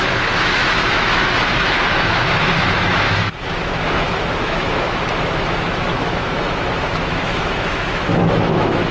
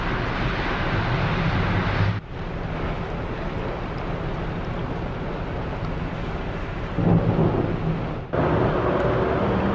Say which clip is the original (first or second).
second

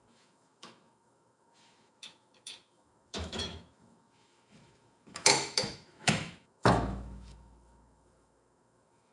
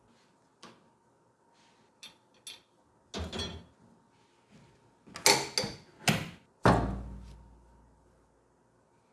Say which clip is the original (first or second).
second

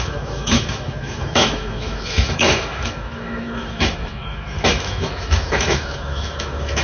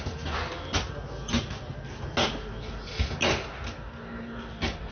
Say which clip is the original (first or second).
second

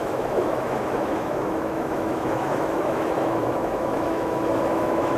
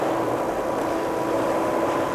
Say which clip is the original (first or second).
second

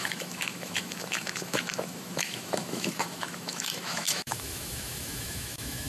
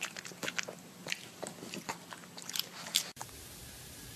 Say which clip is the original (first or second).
second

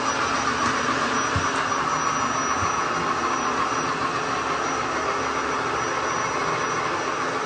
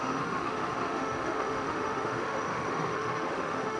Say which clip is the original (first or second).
first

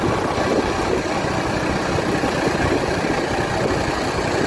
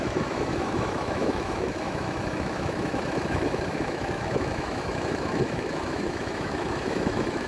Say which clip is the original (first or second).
first